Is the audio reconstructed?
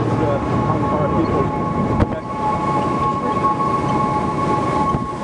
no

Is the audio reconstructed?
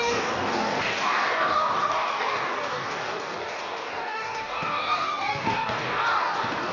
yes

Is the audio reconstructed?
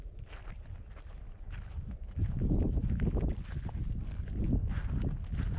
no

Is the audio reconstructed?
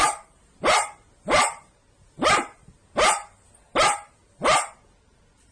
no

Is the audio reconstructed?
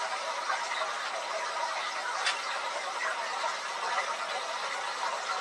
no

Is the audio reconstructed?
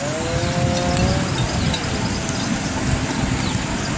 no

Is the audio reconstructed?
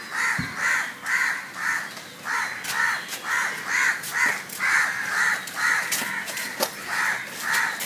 no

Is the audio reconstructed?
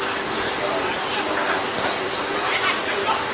no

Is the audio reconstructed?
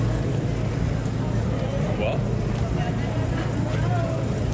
no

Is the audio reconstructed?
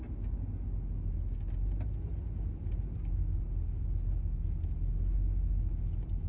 no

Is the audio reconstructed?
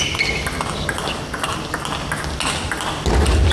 no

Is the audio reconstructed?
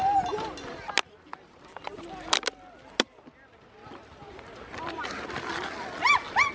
no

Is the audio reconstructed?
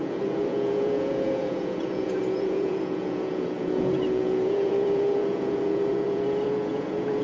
yes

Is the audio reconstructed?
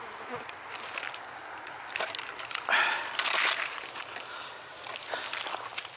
no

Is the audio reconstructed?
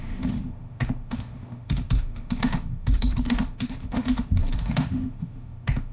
yes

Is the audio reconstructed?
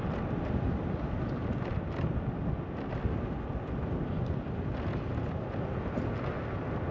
no